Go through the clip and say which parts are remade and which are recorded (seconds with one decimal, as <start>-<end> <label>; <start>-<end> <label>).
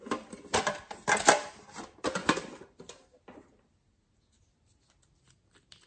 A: 0.0-5.9 recorded